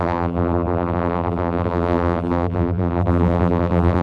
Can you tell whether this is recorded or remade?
remade